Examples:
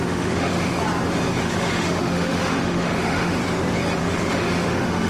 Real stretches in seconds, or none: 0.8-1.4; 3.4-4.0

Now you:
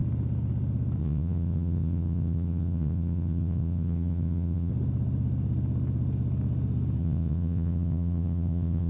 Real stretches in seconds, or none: 0.0-1.0; 4.7-7.0

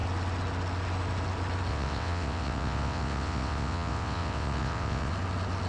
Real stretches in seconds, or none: 0.0-1.7; 5.1-5.7

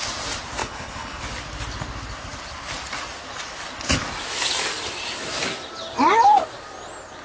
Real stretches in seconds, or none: 0.0-0.6; 1.2-7.2

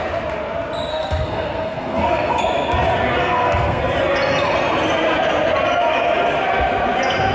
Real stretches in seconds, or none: 0.0-0.9; 2.4-3.2; 3.8-7.3